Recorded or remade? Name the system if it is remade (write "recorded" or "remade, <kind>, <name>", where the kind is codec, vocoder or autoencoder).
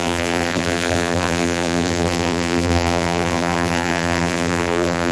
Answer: remade, vocoder, BigVGAN v2